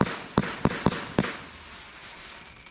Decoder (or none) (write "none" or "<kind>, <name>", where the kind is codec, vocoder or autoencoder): none